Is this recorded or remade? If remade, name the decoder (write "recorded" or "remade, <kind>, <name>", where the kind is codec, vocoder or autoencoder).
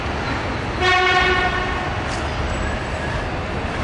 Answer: recorded